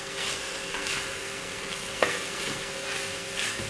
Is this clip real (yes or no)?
no